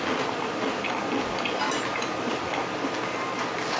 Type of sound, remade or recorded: recorded